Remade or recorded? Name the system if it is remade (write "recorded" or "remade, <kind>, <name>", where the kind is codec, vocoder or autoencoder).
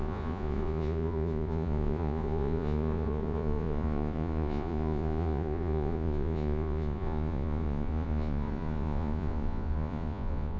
remade, vocoder, Vocos